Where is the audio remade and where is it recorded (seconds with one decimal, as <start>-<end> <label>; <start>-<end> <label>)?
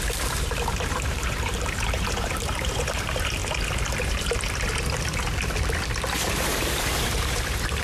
0.0-3.4 remade; 3.4-6.3 recorded; 6.3-7.8 remade